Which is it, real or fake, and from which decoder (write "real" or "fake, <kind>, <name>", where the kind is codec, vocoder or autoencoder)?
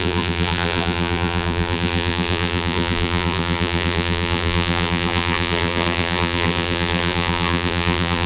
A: fake, vocoder, BigVGAN v2